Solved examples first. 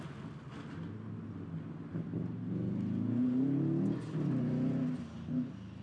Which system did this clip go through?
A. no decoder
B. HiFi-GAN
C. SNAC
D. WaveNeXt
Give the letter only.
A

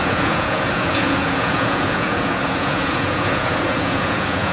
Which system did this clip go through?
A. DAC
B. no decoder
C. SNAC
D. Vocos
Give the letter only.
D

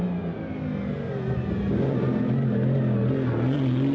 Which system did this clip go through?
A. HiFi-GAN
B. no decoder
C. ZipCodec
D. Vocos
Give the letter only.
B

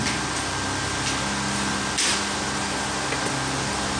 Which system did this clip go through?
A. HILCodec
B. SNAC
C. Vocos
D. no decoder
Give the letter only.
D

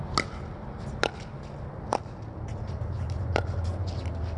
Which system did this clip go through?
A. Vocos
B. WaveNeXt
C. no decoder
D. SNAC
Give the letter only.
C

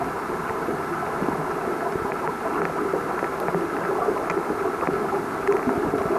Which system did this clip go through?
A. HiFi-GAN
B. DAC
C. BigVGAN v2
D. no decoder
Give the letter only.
D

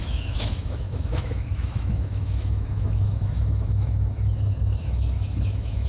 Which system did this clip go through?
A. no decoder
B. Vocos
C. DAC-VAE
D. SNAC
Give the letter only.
C